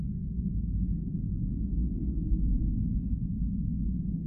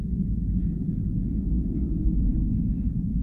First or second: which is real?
second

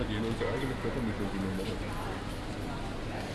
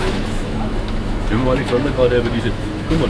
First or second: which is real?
first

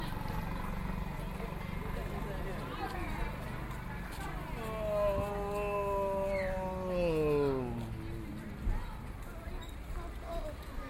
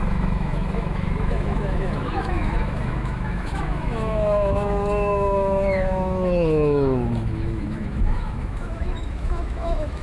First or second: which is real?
first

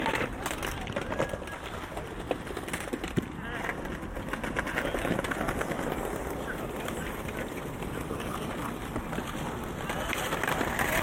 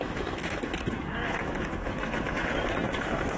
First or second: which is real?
first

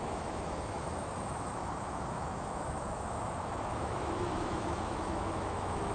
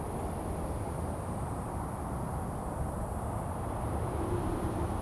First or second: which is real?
second